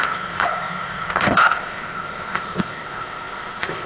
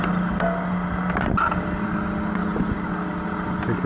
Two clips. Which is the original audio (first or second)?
second